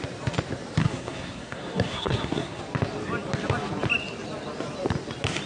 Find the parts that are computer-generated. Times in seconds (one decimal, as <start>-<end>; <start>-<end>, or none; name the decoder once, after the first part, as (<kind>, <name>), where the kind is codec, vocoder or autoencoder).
0.8-2.6 (codec, SNAC)